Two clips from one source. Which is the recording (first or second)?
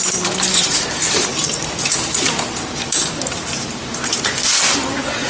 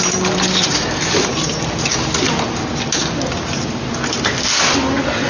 second